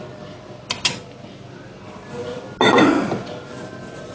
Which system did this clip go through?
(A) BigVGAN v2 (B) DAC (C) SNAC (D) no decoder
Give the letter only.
D